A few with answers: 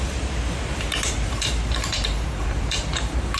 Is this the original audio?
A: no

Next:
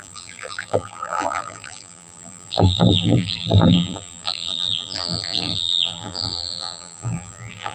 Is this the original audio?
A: no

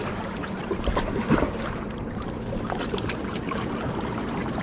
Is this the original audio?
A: no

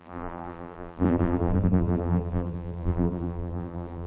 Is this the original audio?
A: no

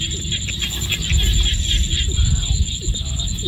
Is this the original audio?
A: yes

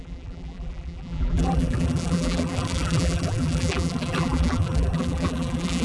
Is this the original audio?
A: no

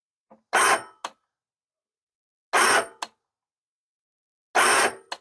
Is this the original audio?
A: yes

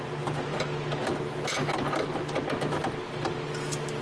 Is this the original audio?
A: yes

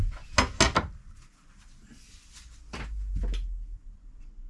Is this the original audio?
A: yes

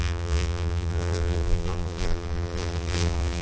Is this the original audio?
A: no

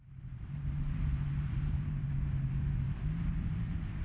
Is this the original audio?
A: no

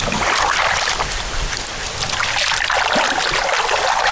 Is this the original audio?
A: yes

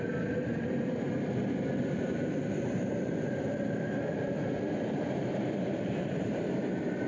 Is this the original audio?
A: no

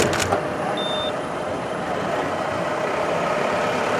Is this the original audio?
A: yes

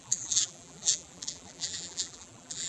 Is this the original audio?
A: no